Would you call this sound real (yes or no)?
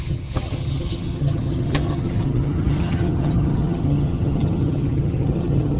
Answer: no